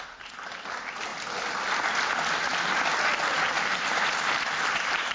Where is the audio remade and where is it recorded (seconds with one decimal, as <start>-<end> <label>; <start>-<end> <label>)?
0.0-3.9 recorded; 3.9-5.1 remade